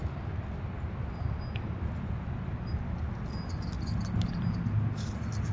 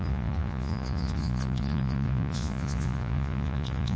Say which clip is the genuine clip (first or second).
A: first